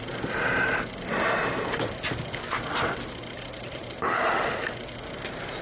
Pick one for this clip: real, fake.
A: real